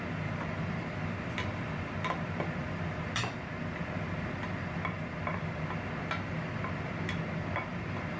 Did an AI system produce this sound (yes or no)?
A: no